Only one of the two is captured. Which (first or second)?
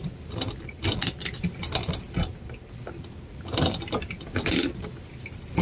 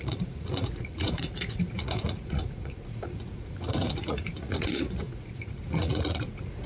first